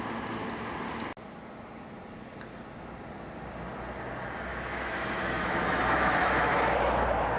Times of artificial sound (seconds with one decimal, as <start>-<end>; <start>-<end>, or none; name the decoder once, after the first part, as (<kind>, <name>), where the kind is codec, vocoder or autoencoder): 4.5-6.6 (autoencoder, DAC-VAE)